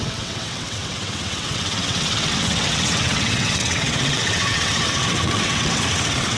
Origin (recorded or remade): remade